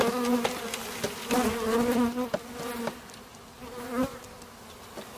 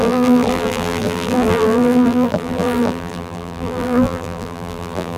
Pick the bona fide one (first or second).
first